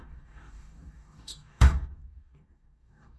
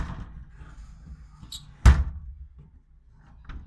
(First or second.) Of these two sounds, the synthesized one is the first